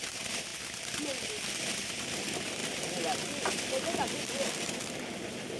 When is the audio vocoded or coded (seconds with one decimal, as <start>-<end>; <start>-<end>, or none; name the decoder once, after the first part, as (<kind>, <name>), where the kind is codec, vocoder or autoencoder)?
none